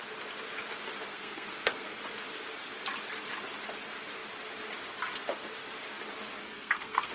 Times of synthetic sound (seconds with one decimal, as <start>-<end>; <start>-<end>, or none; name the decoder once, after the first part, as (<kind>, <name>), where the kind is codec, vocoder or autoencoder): 1.1-2.0 (codec, SNAC); 6.4-7.1